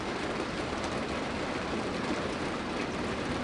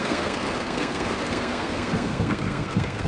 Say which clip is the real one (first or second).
first